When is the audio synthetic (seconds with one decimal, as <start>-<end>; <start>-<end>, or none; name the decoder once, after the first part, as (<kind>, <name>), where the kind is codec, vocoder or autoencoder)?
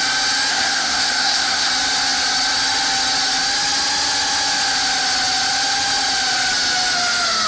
0.5-1.7 (codec, SNAC)